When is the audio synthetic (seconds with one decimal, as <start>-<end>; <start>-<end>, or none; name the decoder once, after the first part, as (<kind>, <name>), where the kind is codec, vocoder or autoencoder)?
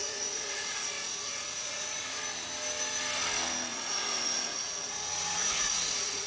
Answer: 0.0-2.2 (vocoder, Vocos); 3.7-6.3